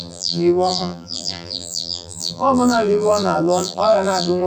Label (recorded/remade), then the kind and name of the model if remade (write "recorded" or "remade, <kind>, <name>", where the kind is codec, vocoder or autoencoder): remade, vocoder, BigVGAN v2